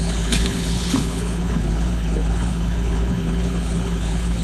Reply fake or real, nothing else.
fake